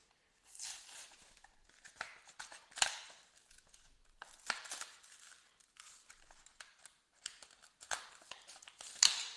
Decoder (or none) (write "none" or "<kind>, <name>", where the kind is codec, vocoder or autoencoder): none